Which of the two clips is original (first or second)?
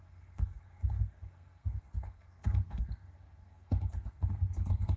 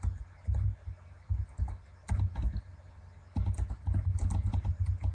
second